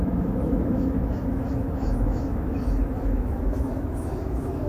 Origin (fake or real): fake